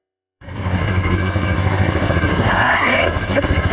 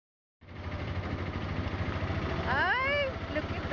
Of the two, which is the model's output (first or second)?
first